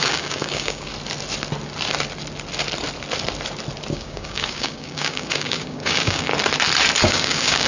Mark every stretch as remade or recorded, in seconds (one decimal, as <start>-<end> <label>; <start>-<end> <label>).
0.0-0.9 remade; 0.9-3.9 recorded; 3.9-6.3 remade; 6.3-7.0 recorded; 7.0-7.7 remade